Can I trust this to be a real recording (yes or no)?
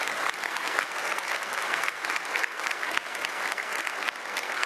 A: no